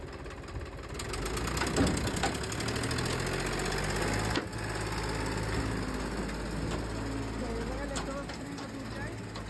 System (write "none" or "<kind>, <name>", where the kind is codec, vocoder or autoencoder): none